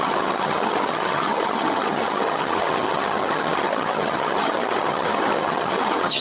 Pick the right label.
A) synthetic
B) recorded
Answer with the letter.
A